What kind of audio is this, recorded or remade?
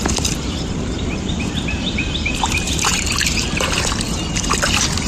remade